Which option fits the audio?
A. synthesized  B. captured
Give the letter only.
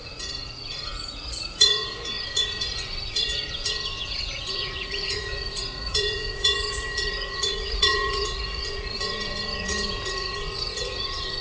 A